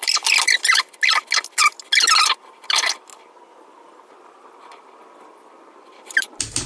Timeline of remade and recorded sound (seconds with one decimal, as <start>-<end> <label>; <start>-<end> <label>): 0.0-6.7 recorded